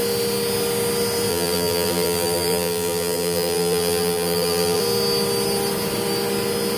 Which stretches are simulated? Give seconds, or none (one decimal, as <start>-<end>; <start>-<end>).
1.3-4.8